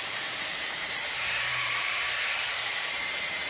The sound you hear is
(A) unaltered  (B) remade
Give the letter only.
B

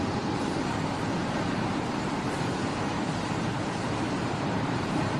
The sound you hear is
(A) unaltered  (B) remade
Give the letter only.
B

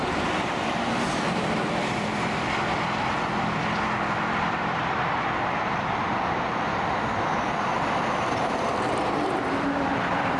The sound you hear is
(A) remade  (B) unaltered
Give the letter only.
A